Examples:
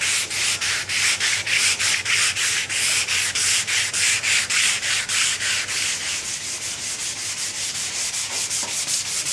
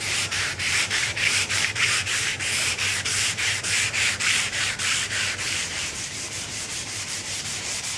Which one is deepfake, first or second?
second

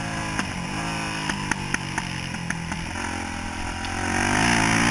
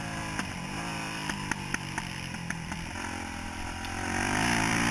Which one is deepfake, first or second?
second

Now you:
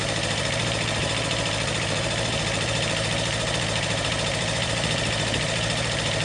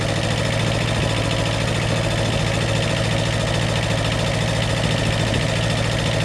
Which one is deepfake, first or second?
first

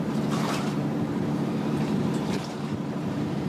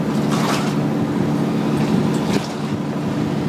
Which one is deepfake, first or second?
first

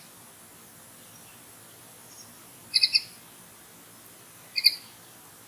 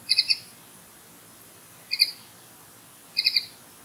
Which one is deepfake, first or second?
second